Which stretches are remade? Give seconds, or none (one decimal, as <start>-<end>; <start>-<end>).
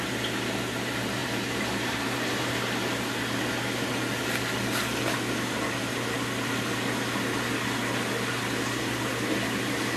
1.2-2.5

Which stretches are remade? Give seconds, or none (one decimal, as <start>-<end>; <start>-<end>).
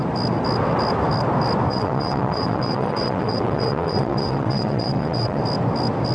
1.7-5.4